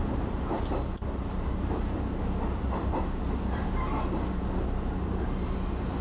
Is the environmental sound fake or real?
real